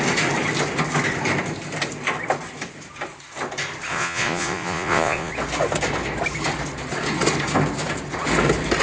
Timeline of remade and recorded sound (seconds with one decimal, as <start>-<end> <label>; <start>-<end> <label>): 0.0-3.9 recorded; 3.9-5.3 remade; 5.3-8.8 recorded